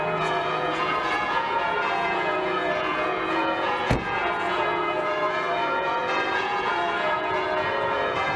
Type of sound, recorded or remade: remade